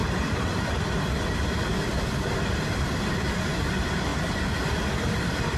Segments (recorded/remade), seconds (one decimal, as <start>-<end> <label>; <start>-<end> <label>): 0.0-0.7 remade; 0.7-1.9 recorded; 1.9-2.9 remade; 2.9-5.6 recorded